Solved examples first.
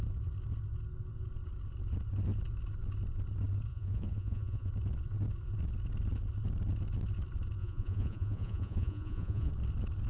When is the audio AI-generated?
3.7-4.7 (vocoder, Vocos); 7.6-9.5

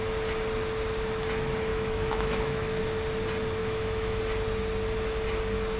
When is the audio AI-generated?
1.7-2.8 (autoencoder, DAC-VAE); 3.6-4.2

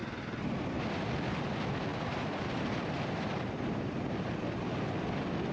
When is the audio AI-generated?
none

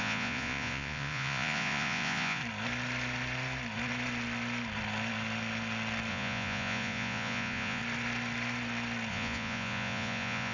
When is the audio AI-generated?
0.0-2.4 (vocoder, Vocos); 6.1-7.8; 9.1-10.5

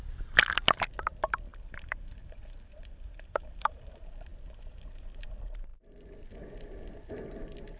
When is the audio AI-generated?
1.5-3.9 (vocoder, BigVGAN v2)